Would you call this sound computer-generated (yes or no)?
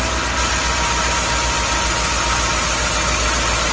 no